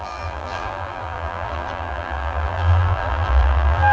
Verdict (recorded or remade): remade